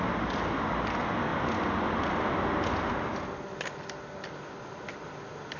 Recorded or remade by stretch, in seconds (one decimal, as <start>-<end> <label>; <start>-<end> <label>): 0.0-5.6 recorded